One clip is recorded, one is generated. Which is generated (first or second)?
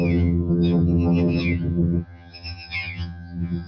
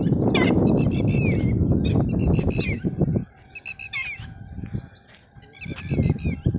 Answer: first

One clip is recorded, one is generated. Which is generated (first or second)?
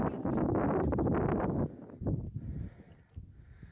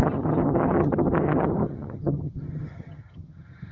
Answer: second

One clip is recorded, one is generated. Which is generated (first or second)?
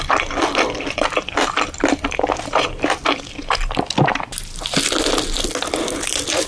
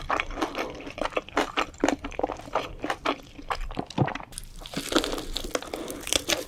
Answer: second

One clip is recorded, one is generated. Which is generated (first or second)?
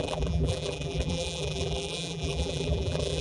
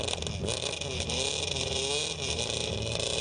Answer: first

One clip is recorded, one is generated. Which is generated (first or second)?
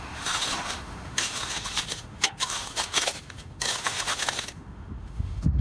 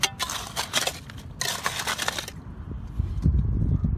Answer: first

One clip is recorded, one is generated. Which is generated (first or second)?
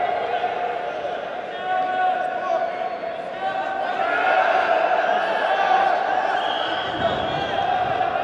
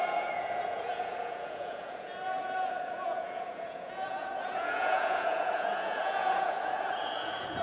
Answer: second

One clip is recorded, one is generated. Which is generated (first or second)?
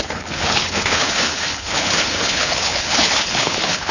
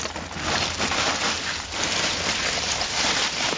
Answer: first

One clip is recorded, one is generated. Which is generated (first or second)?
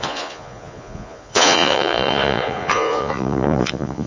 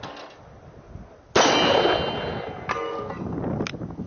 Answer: first